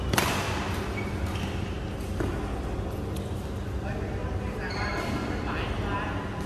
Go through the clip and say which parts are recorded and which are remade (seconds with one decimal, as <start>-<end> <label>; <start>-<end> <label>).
0.0-4.2 recorded; 4.2-5.0 remade; 5.0-6.5 recorded